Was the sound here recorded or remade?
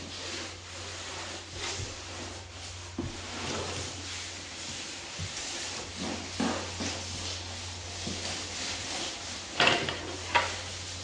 recorded